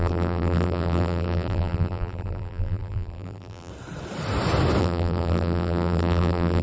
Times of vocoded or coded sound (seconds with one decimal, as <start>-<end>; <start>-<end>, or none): 0.0-3.7; 4.8-6.6